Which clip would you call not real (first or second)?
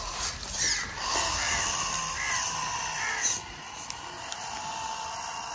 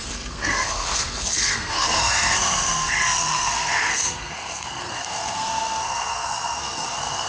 second